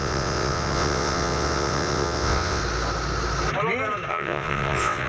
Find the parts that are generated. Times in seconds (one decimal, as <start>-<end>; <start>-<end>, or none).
0.0-2.6; 4.1-5.1